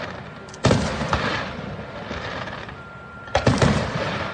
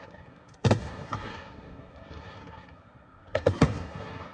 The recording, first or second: first